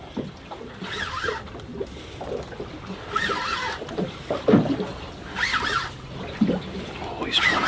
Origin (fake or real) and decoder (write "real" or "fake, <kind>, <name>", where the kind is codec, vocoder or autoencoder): real